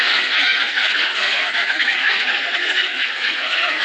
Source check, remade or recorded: remade